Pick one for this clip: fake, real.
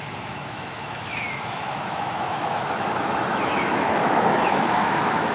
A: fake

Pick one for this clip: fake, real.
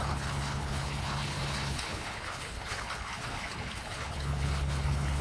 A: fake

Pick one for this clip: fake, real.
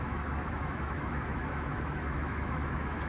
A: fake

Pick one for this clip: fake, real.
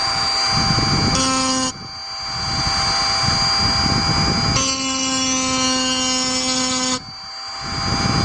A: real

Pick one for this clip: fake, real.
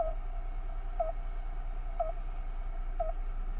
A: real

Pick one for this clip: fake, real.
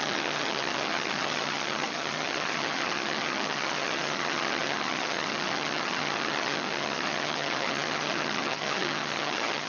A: fake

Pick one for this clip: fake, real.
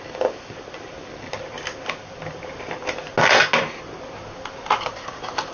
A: real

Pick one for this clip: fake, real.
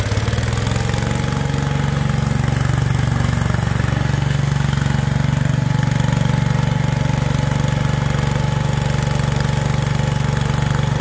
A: real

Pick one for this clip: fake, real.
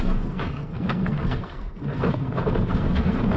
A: fake